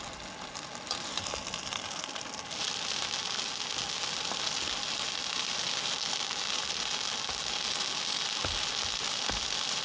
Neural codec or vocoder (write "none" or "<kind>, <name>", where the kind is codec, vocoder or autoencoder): none